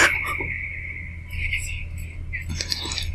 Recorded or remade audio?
recorded